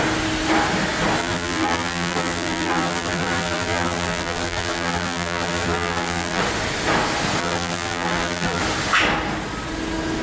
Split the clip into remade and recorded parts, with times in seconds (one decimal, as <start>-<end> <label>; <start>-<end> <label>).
0.0-1.2 recorded; 1.2-6.4 remade; 6.4-7.4 recorded; 7.4-8.6 remade; 8.6-10.2 recorded